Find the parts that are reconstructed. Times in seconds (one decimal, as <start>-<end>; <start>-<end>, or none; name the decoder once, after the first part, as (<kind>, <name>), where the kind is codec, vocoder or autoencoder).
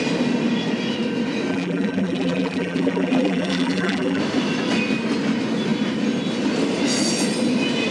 1.5-4.2 (vocoder, BigVGAN v2)